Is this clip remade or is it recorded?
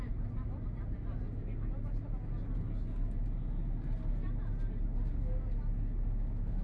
recorded